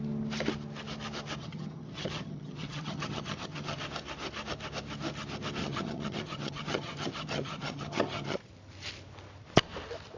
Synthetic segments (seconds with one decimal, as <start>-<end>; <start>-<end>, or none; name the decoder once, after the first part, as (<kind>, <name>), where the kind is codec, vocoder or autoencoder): 1.4-3.8 (vocoder, HiFi-GAN); 5.6-8.5